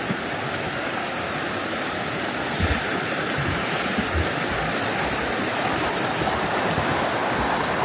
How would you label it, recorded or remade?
recorded